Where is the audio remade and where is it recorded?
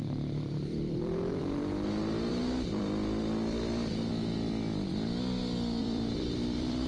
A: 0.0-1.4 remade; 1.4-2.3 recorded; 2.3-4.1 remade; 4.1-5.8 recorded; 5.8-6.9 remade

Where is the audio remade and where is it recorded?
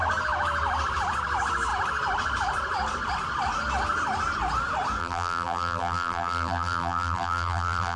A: 0.0-5.0 recorded; 5.0-8.0 remade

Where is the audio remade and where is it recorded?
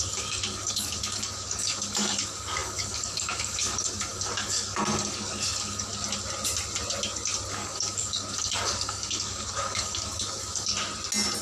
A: 0.0-5.9 remade; 5.9-7.5 recorded; 7.5-10.7 remade; 10.7-11.4 recorded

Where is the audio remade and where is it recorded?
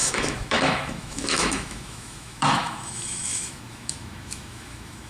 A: 0.0-5.1 remade